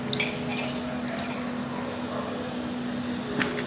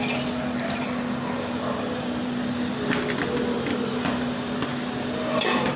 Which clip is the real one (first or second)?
first